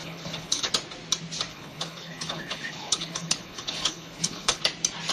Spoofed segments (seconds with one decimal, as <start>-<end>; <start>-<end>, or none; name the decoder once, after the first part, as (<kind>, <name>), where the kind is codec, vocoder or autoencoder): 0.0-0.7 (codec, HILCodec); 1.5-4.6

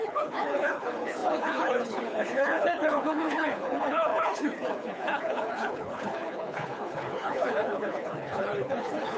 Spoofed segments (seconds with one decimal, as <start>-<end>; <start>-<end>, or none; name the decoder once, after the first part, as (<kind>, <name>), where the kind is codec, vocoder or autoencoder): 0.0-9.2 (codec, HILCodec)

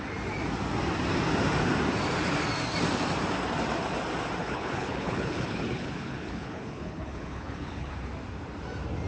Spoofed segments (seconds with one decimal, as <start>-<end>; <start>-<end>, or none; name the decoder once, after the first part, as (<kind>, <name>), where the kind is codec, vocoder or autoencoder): 4.4-7.9 (codec, HILCodec)

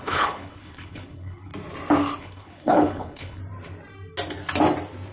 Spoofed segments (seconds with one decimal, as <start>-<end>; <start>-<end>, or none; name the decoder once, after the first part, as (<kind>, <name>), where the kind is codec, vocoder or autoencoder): 0.0-1.5 (codec, HILCodec); 2.2-3.4

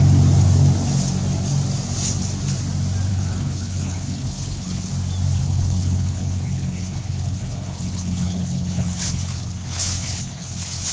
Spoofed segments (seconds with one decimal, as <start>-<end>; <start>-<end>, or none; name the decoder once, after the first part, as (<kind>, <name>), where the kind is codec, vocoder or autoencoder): 3.1-4.9 (codec, HILCodec); 5.4-10.9

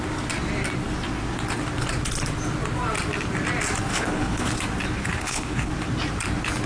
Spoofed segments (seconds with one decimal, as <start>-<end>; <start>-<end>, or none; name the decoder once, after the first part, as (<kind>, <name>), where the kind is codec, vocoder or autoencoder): 3.9-4.6 (codec, HILCodec); 5.0-5.7